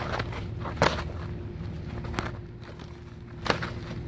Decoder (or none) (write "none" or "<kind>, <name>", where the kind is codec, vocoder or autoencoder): none